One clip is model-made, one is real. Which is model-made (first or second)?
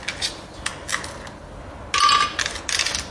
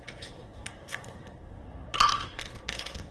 second